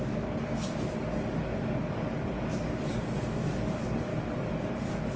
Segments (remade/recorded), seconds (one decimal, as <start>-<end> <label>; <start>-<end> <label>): 0.0-4.1 remade; 4.1-4.7 recorded; 4.7-5.2 remade